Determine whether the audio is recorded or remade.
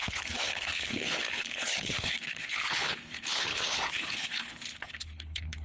remade